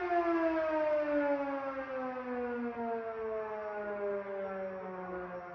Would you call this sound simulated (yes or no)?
no